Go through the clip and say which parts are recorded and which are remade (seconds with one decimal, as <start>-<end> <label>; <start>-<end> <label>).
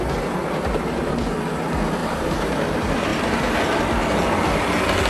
0.0-0.4 recorded; 0.4-1.0 remade; 1.0-2.0 recorded; 2.0-2.7 remade; 2.7-3.1 recorded; 3.1-3.6 remade; 3.6-5.1 recorded